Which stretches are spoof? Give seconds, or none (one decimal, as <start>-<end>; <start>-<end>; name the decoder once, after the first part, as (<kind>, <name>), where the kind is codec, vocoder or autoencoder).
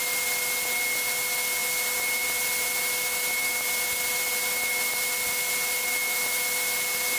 none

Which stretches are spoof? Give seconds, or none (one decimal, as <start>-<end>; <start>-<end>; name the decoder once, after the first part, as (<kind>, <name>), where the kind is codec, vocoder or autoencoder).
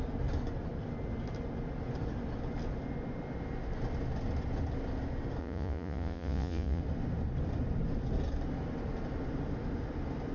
5.4-6.8 (vocoder, Vocos)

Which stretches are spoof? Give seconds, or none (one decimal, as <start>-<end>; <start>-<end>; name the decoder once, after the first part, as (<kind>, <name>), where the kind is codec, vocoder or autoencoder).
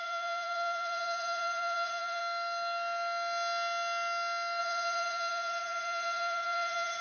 0.0-2.2 (vocoder, Vocos); 4.6-7.0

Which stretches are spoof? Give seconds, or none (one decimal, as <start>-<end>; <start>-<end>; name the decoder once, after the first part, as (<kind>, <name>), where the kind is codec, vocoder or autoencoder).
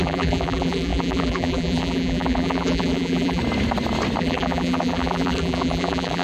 0.0-3.4 (vocoder, BigVGAN v2); 4.2-6.2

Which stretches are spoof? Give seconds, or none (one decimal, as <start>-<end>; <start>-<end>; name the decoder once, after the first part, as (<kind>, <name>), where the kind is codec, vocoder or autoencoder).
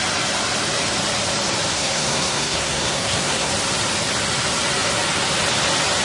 1.7-3.5 (codec, SNAC)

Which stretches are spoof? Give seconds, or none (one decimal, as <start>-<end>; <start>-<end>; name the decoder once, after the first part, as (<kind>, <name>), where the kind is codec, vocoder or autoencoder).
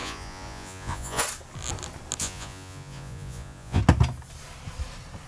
0.0-1.2 (vocoder, Vocos); 2.2-3.8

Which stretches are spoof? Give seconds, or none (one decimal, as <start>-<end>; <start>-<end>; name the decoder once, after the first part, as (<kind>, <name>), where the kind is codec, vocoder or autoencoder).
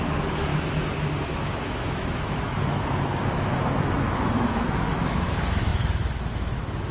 0.0-0.5 (autoencoder, DAC-VAE); 1.3-6.9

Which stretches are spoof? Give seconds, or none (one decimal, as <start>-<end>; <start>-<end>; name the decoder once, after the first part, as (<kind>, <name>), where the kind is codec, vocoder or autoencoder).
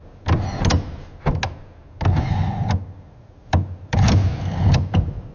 none